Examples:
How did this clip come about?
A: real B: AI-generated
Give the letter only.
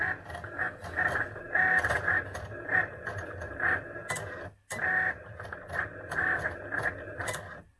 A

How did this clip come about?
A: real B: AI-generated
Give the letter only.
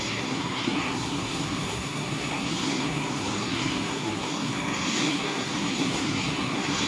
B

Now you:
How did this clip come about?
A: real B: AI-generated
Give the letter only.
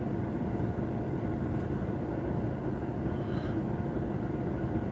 A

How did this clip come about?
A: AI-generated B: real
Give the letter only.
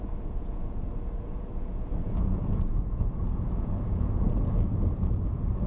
A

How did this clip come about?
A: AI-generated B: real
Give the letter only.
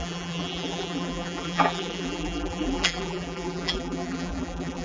A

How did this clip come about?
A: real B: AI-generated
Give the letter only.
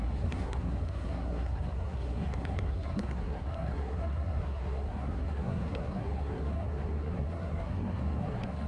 B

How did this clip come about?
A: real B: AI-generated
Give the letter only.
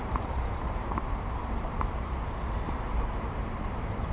B